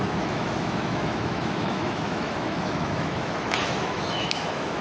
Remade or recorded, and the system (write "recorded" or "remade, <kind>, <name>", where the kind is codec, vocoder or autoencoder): remade, autoencoder, DAC-VAE